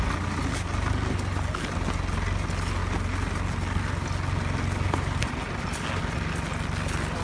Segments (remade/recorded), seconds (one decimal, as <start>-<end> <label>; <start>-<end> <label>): 0.0-7.2 recorded